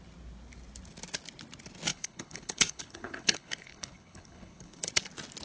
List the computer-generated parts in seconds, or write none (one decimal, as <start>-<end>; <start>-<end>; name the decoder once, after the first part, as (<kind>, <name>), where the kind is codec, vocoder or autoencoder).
1.9-4.9 (codec, HILCodec)